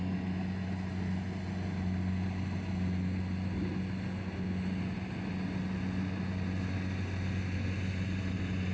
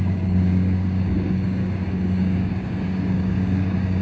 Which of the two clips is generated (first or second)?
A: second